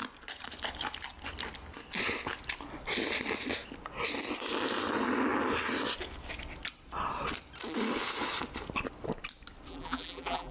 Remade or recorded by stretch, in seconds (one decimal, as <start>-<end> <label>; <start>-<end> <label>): 0.0-9.7 recorded; 9.7-10.5 remade